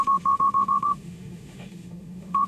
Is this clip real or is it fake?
fake